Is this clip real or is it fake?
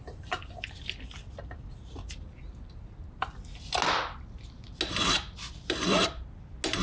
real